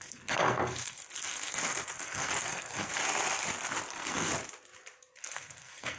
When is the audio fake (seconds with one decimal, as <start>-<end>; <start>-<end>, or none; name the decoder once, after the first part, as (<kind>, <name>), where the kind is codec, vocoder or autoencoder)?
0.0-3.0 (codec, SNAC); 3.9-4.3; 5.2-6.0